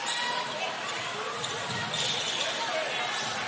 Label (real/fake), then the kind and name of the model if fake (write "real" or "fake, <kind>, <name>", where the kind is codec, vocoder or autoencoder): real